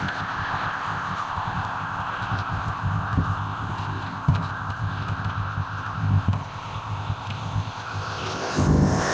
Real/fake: fake